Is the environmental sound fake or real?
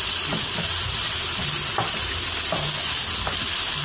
real